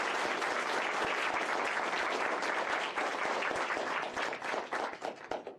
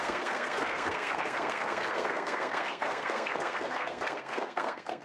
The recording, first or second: first